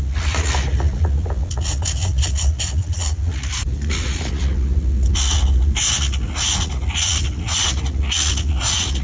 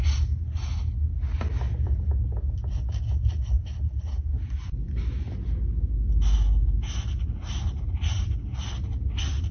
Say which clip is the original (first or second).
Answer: second